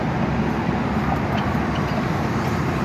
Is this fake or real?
real